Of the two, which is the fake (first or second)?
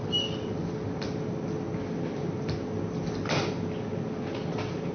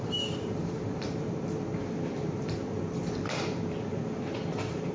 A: second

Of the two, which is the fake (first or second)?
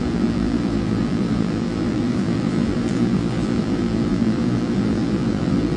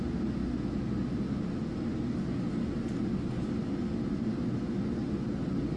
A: first